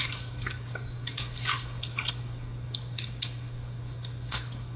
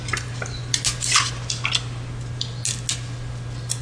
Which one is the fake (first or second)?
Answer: first